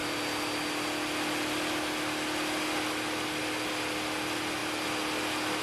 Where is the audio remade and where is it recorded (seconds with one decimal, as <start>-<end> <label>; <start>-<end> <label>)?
0.0-5.6 recorded